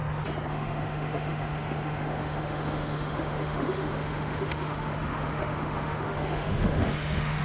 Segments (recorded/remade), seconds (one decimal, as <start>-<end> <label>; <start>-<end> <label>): 0.0-0.5 recorded; 0.5-7.4 remade